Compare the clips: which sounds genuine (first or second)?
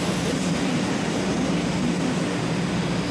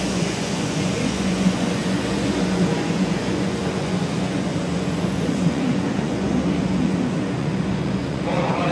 first